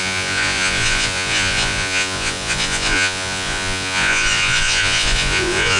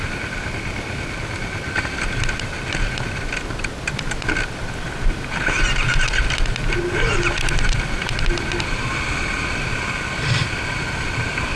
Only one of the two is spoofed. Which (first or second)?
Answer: first